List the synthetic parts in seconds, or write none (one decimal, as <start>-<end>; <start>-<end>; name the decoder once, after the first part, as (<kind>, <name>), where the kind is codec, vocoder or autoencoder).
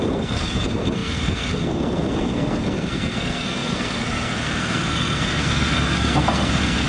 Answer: 0.0-6.9 (codec, SNAC)